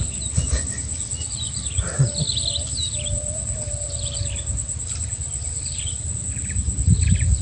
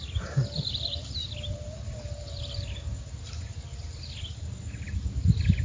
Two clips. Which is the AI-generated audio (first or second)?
second